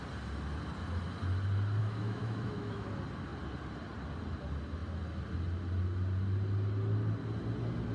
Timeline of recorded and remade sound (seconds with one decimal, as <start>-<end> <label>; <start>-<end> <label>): 0.0-1.8 recorded; 1.8-2.9 remade; 2.9-7.9 recorded